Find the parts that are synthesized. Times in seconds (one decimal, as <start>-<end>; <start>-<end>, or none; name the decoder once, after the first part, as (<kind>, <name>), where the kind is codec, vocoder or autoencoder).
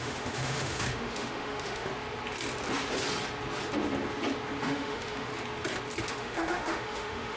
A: 0.0-1.9 (autoencoder, DAC-VAE); 4.6-5.3; 6.0-7.4